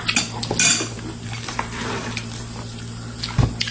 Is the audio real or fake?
real